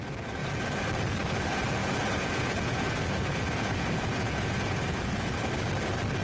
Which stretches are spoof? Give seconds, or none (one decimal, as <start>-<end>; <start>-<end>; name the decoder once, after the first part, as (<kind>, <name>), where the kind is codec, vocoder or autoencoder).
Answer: 1.8-5.5 (vocoder, Vocos)